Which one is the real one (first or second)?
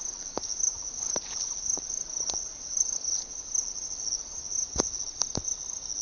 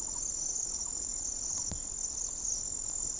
first